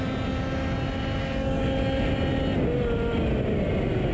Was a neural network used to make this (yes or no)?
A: no